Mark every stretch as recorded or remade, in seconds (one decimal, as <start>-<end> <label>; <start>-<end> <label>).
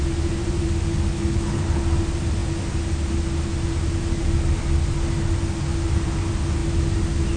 0.0-1.1 recorded; 1.1-1.8 remade; 1.8-7.4 recorded